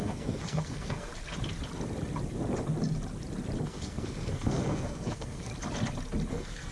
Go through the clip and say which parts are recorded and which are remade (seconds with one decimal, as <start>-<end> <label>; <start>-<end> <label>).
0.0-1.1 remade; 1.1-3.6 recorded; 3.6-5.5 remade; 5.5-6.3 recorded; 6.3-6.7 remade